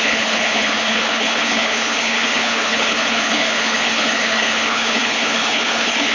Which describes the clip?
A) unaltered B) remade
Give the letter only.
B